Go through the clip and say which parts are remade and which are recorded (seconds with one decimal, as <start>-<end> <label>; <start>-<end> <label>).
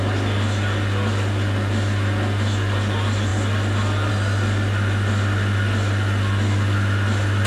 0.0-7.5 recorded